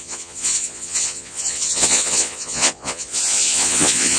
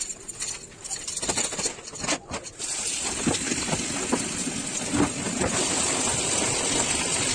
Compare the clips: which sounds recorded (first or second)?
second